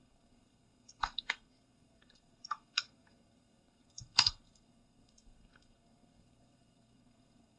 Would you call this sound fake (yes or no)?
yes